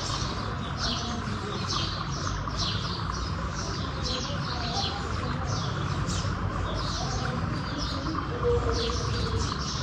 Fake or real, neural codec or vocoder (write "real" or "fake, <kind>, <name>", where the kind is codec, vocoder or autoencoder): real